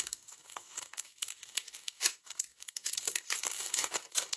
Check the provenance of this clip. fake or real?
fake